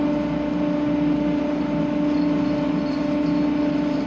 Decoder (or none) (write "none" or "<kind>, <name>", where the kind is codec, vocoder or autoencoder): none